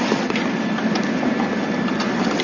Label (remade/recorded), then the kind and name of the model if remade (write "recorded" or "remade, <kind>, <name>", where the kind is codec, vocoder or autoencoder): recorded